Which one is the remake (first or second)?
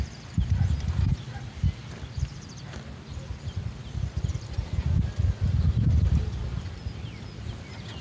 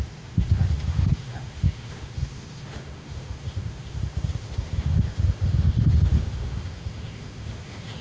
second